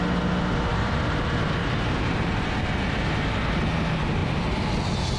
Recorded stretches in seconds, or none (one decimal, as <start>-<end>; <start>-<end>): 0.0-0.7; 2.6-5.2